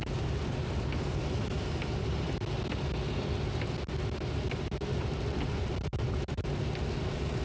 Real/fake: real